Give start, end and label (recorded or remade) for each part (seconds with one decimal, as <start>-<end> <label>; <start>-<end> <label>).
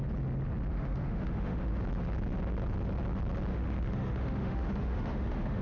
0.0-0.7 recorded; 0.7-1.8 remade; 1.8-3.5 recorded; 3.5-5.6 remade